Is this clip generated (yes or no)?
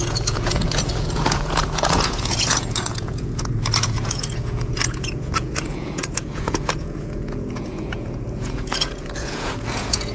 yes